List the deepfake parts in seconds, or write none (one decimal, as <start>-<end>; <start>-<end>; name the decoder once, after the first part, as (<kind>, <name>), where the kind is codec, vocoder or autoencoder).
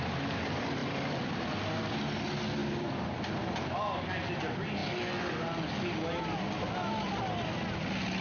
0.8-1.3 (vocoder, BigVGAN v2); 2.6-3.2